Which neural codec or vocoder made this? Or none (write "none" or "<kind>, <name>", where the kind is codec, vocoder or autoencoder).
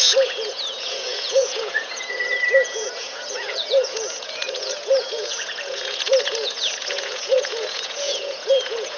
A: vocoder, Vocos